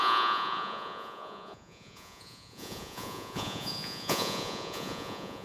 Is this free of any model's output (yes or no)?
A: no